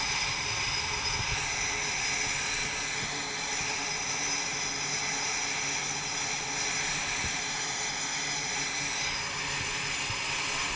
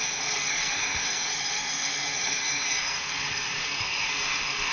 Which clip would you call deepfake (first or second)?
second